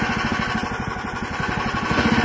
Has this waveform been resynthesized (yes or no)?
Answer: no